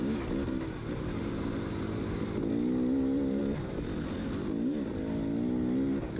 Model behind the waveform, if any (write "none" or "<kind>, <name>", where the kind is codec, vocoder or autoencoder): none